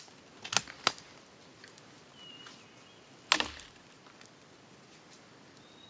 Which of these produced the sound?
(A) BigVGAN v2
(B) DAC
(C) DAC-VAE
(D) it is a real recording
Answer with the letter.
D